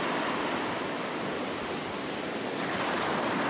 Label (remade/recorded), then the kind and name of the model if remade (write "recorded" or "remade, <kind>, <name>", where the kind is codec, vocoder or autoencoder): recorded